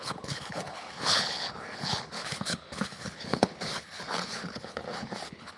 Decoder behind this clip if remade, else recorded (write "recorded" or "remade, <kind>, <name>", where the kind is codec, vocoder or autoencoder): remade, codec, HILCodec